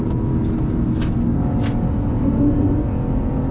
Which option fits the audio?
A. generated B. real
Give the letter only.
B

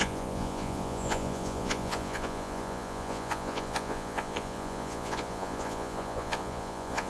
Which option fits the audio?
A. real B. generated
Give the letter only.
B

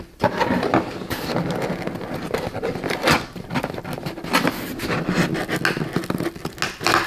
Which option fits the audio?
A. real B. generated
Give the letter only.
A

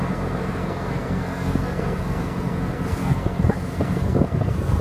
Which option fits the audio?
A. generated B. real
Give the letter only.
A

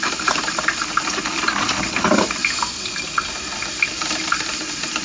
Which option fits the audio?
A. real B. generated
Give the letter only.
B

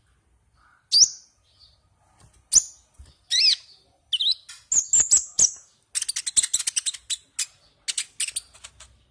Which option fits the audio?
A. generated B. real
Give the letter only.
B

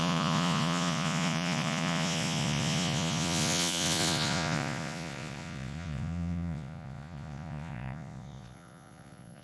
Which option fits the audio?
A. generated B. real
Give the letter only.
A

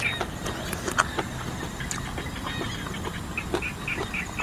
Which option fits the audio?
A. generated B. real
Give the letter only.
B